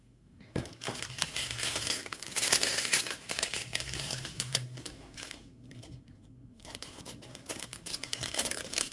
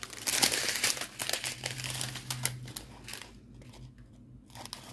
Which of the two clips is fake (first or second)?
first